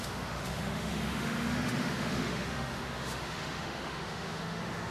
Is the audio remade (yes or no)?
yes